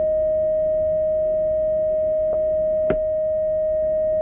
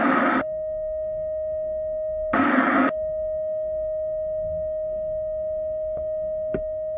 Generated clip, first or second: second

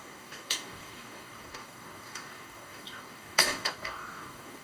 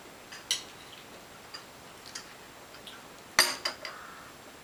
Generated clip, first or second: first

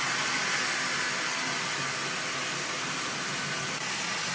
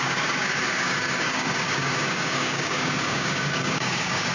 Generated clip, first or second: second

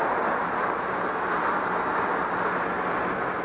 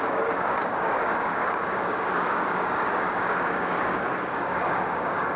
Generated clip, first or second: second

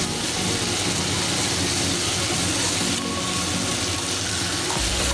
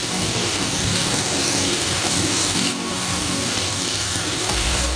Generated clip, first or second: second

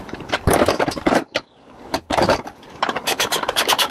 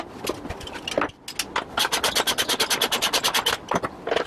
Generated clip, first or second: first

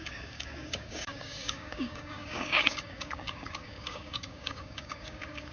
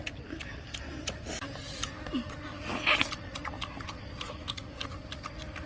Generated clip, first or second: first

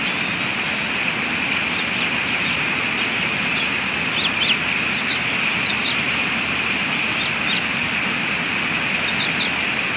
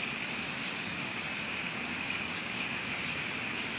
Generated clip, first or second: second